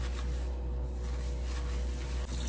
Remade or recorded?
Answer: recorded